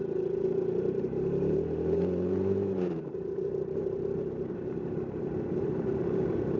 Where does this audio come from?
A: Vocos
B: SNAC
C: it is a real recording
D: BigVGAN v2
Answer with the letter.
D